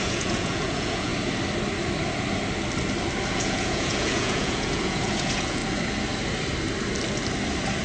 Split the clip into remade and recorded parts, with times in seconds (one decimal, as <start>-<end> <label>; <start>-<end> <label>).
0.0-1.1 remade; 1.1-3.3 recorded; 3.3-5.6 remade; 5.6-7.8 recorded